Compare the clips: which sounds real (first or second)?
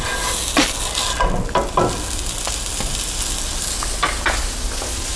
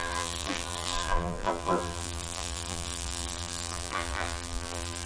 first